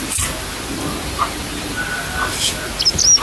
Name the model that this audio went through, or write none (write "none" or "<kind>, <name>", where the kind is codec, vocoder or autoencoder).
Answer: none